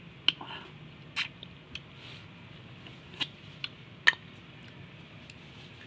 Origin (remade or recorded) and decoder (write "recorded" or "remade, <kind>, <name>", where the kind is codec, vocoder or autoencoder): recorded